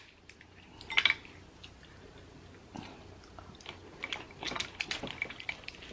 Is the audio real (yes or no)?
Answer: yes